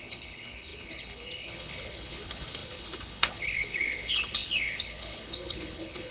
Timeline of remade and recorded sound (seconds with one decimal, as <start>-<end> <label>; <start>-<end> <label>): 0.0-6.1 remade